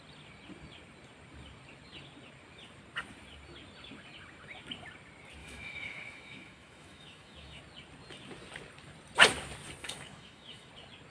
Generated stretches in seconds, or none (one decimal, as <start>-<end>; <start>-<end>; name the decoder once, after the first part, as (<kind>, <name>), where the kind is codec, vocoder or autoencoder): 5.4-7.6 (autoencoder, DAC-VAE); 9.8-10.7